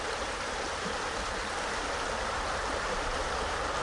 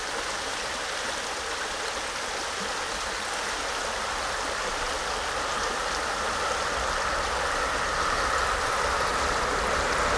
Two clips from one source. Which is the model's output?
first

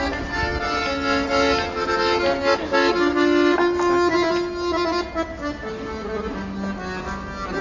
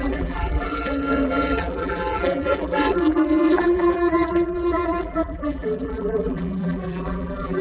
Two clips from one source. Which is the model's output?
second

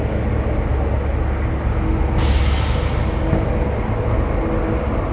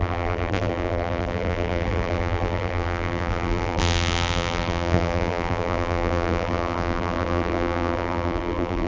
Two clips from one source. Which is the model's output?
second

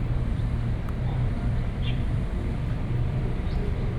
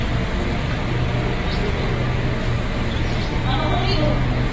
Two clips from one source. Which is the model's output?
first